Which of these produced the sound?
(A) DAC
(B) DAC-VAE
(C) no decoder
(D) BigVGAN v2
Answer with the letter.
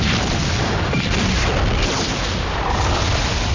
D